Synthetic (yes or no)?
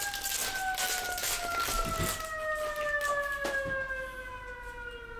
no